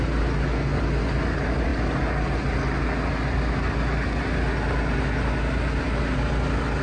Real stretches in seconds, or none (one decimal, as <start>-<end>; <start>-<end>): 0.0-6.8

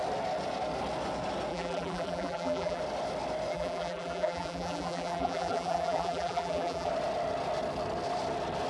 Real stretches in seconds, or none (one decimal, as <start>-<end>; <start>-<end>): 0.0-1.5; 2.8-3.5; 6.9-8.7

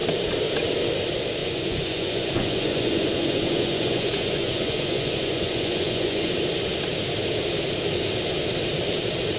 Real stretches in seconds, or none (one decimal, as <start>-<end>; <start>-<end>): 0.0-1.4; 6.3-9.4

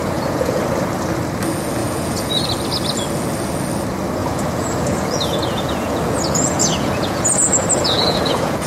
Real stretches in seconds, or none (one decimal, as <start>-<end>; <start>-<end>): 0.6-1.8; 2.3-4.2

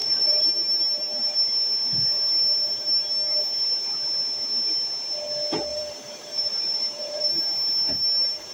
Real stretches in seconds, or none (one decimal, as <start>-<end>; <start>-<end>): 0.5-5.7; 7.4-8.5

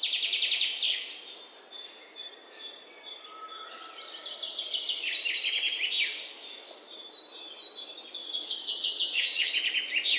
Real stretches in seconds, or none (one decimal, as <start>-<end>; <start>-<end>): 0.0-8.2; 9.5-10.2